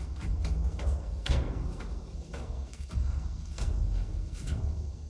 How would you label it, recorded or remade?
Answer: remade